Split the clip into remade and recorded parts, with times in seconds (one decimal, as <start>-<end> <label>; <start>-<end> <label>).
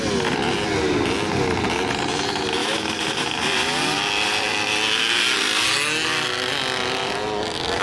0.0-2.6 recorded; 2.6-3.2 remade; 3.2-7.8 recorded